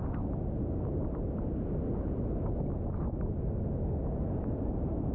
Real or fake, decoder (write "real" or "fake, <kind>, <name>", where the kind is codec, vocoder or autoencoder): real